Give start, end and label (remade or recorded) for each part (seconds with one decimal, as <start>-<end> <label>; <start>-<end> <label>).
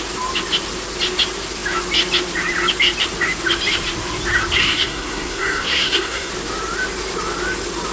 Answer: 0.0-4.6 recorded; 4.6-6.3 remade; 6.3-7.9 recorded